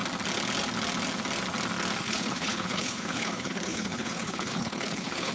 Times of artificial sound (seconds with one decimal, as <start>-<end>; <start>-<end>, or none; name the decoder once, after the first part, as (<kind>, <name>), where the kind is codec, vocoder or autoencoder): 2.0-5.3 (codec, HILCodec)